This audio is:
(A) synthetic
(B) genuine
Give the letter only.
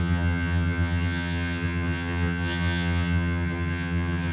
A